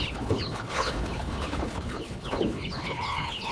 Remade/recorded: remade